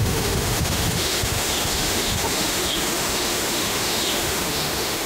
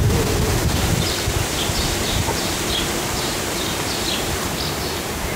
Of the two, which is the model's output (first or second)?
first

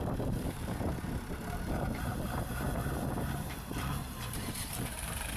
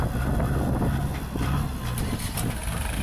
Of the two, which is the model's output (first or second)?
first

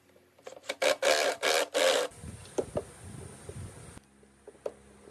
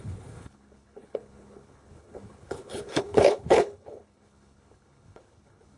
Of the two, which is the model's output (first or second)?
second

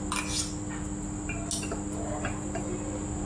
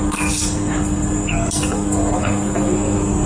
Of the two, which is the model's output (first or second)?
second